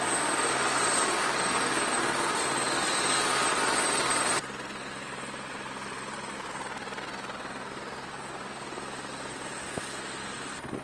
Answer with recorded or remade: recorded